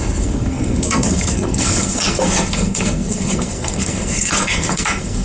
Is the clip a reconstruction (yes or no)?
yes